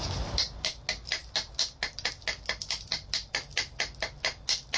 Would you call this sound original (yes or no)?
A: yes